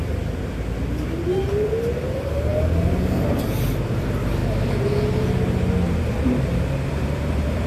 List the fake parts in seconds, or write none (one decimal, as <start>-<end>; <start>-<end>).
0.0-2.5; 3.7-4.4; 6.9-7.7

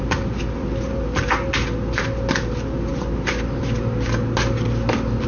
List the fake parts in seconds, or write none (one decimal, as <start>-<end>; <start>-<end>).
none

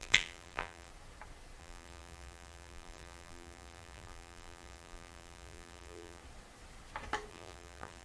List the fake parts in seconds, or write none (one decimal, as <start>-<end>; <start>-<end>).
0.0-0.9; 1.6-6.2; 7.3-8.0

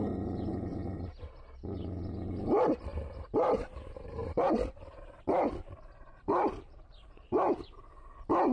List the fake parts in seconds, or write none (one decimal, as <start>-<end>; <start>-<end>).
2.9-3.8; 4.2-7.6

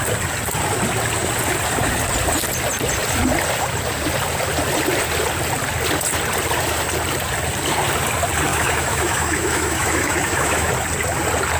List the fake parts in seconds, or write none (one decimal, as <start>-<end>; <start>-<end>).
8.5-10.7

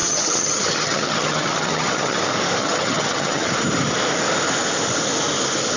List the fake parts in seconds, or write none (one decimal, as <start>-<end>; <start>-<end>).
0.0-2.2; 2.6-3.5

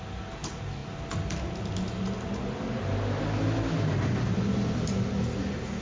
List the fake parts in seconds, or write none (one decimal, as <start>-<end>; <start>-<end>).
none

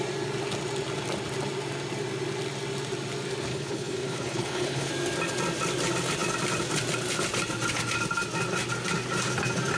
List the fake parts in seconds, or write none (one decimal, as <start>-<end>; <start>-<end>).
3.5-4.9